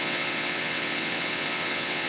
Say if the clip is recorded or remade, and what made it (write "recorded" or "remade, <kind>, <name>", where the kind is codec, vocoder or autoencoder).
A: remade, vocoder, WaveNeXt